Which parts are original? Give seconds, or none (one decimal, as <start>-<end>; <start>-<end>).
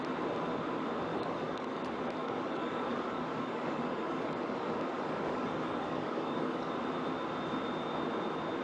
0.0-1.1; 1.8-2.2; 6.7-8.6